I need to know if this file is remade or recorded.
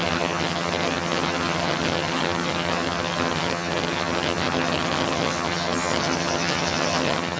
remade